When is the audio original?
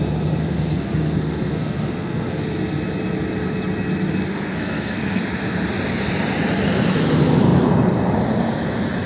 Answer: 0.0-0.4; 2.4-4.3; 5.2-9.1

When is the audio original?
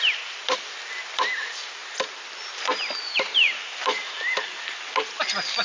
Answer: 0.0-1.8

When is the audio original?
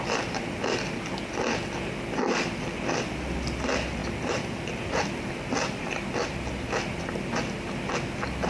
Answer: 0.0-8.5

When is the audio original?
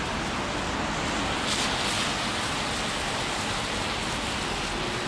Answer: 0.0-5.1